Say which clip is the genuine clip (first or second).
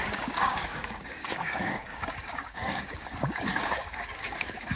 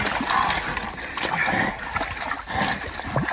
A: second